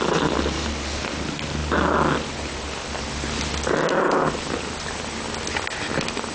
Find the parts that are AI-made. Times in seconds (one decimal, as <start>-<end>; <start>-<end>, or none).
none